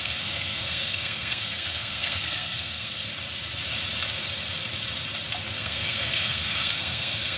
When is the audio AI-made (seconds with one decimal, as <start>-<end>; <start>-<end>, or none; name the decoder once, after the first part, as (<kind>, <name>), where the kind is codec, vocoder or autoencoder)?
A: 0.0-3.1 (codec, SNAC); 5.6-7.4